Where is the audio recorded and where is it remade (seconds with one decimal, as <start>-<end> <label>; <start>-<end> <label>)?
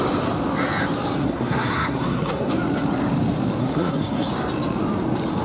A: 0.0-1.2 recorded; 1.2-2.5 remade; 2.5-3.6 recorded; 3.6-4.3 remade; 4.3-5.4 recorded